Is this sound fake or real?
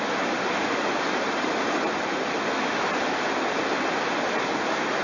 real